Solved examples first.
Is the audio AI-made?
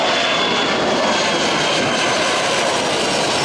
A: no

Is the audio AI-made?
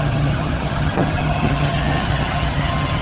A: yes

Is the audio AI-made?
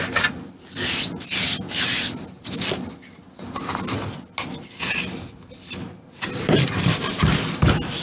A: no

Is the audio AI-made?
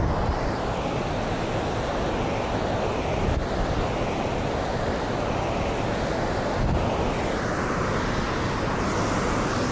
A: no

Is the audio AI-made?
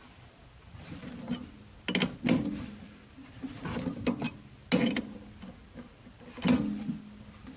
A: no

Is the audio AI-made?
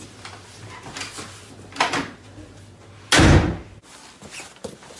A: no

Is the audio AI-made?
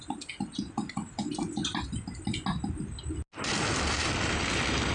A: no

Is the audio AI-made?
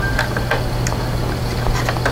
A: no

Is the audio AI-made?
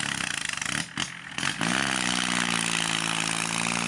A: no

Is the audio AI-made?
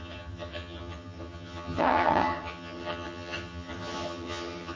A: yes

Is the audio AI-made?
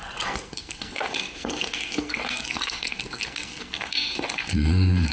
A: yes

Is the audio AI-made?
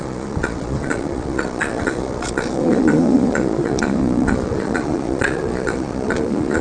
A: yes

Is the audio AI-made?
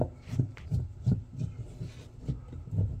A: no